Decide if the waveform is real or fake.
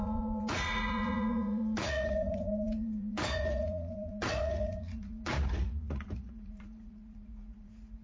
fake